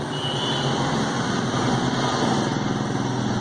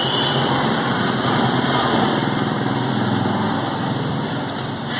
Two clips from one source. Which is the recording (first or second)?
first